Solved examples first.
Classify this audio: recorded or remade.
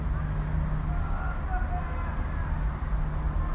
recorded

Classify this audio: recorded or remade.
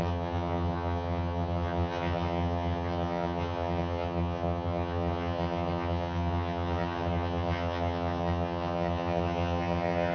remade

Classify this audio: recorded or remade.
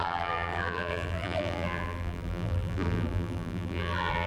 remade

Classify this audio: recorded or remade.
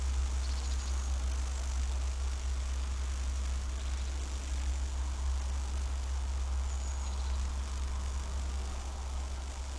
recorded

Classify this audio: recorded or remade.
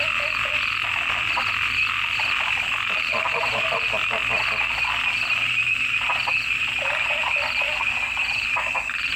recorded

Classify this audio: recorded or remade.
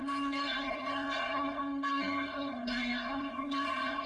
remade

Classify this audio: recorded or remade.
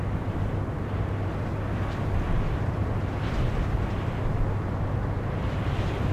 recorded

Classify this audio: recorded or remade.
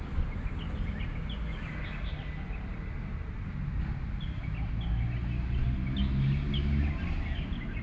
recorded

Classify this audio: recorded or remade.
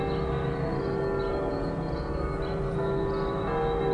recorded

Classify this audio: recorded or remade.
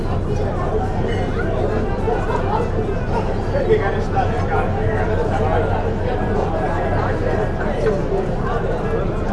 recorded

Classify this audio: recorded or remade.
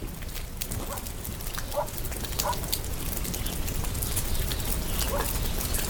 recorded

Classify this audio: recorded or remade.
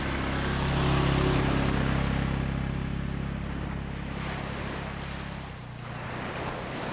recorded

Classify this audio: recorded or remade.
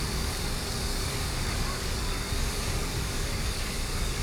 remade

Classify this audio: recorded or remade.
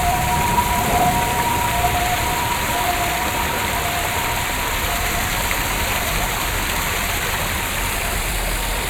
remade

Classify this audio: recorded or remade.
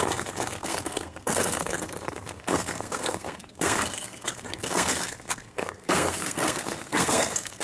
remade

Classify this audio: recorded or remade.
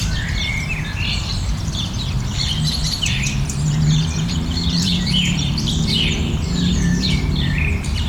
remade